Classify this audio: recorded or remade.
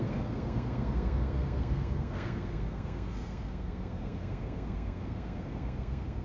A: remade